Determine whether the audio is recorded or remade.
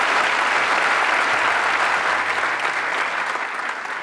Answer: recorded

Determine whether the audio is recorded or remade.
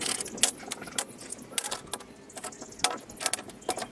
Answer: recorded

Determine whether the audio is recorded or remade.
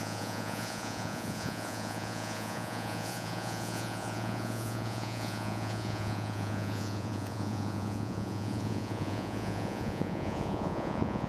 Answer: remade